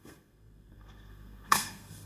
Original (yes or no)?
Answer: no